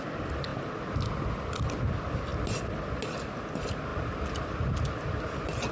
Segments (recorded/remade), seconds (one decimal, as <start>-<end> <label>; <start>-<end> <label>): 0.0-5.7 recorded